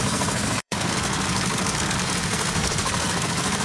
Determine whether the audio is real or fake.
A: fake